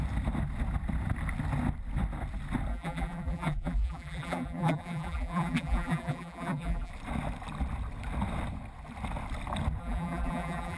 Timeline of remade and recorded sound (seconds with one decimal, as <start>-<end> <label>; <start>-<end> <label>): 0.0-2.7 recorded; 2.7-6.9 remade; 6.9-9.8 recorded; 9.8-10.8 remade

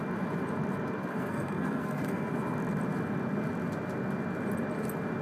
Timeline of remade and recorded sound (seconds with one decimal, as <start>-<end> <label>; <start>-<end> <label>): 0.0-1.1 recorded; 1.1-2.3 remade; 2.3-5.2 recorded

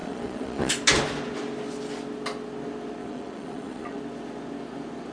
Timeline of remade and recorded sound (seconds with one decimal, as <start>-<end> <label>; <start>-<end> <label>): 0.0-0.7 remade; 0.7-3.0 recorded; 3.0-4.0 remade; 4.0-5.1 recorded

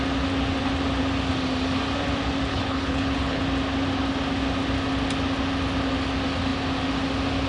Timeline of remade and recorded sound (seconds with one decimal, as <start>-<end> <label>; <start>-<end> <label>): 0.0-2.5 recorded; 2.5-3.4 remade; 3.4-7.5 recorded

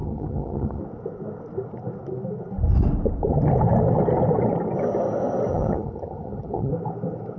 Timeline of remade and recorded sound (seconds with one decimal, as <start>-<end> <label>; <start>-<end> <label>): 0.0-0.8 remade; 0.8-5.5 recorded; 5.5-6.7 remade; 6.7-7.4 recorded